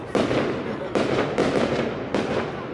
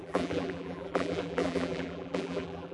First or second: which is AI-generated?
second